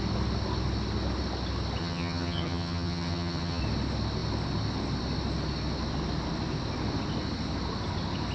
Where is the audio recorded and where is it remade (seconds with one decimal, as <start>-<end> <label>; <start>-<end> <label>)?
0.0-1.8 recorded; 1.8-3.6 remade; 3.6-8.3 recorded